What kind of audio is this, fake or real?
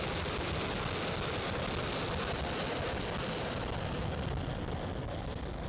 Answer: real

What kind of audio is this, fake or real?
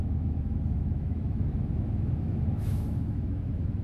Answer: fake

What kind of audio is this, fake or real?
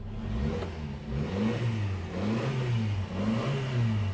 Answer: real